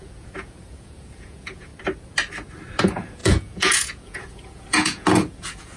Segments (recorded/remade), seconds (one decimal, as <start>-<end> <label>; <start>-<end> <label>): 0.0-1.7 remade; 1.7-2.8 recorded; 2.8-5.8 remade